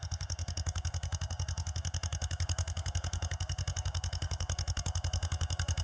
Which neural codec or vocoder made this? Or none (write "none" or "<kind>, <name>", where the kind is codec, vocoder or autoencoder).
codec, SNAC